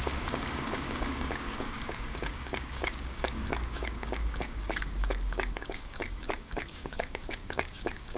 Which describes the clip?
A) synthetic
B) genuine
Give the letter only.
A